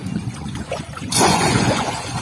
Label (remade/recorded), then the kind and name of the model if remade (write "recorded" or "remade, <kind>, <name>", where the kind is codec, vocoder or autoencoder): remade, vocoder, Vocos